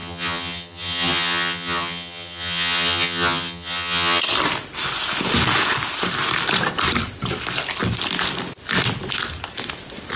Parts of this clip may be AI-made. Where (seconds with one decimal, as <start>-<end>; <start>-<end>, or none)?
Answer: 0.0-4.2